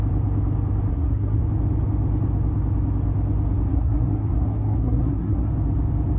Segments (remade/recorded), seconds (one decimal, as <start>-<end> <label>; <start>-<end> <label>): 0.0-0.9 recorded; 0.9-1.4 remade; 1.4-3.7 recorded; 3.7-5.5 remade; 5.5-6.2 recorded